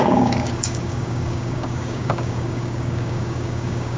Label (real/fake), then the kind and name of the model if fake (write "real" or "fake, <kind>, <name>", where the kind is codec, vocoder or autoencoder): fake, codec, DAC